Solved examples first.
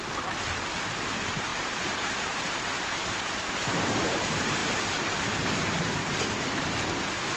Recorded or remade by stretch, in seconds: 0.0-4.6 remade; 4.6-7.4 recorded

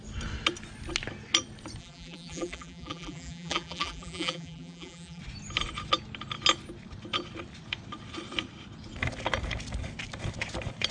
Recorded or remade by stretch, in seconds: 0.0-1.8 recorded; 1.8-5.2 remade; 5.2-10.9 recorded

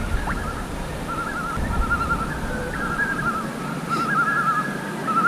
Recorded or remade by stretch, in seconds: 0.0-5.3 recorded

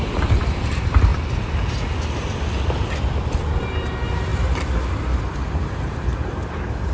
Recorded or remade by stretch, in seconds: 0.0-1.1 remade; 1.1-3.6 recorded; 3.6-4.3 remade; 4.3-5.2 recorded; 5.2-6.9 remade

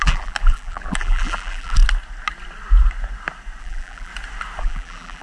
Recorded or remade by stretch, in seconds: 0.0-1.8 remade; 1.8-3.6 recorded; 3.6-4.1 remade; 4.1-4.6 recorded; 4.6-5.2 remade

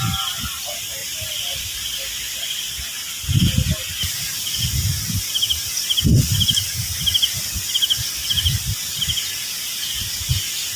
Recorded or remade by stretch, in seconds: 0.0-1.0 recorded; 1.0-2.1 remade; 2.1-8.2 recorded; 8.2-9.0 remade; 9.0-10.8 recorded